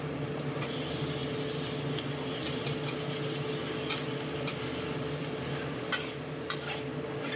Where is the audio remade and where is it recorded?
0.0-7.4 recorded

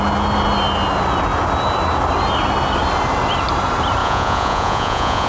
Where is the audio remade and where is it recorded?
0.0-4.0 recorded; 4.0-5.3 remade

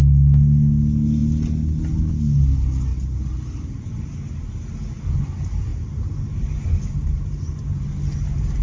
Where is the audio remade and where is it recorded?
0.0-8.6 recorded

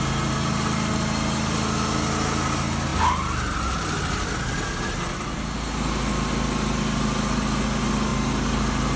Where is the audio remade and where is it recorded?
0.0-9.0 recorded

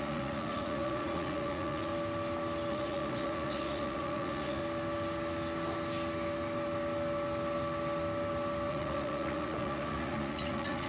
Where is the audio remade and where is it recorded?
0.0-1.9 remade; 1.9-2.7 recorded; 2.7-4.6 remade; 4.6-8.7 recorded; 8.7-10.9 remade

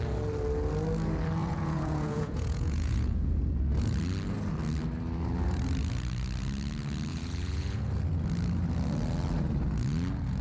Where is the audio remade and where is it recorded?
0.0-1.4 recorded; 1.4-3.5 remade; 3.5-7.1 recorded; 7.1-8.0 remade; 8.0-10.4 recorded

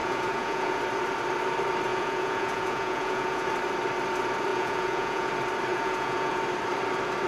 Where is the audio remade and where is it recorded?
0.0-0.8 remade; 0.8-1.9 recorded; 1.9-3.5 remade; 3.5-4.5 recorded; 4.5-5.3 remade; 5.3-5.7 recorded; 5.7-6.4 remade; 6.4-7.3 recorded

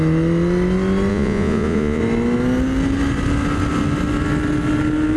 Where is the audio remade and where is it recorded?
0.0-1.1 recorded; 1.1-2.0 remade; 2.0-5.2 recorded